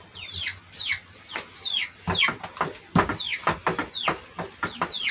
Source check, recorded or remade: recorded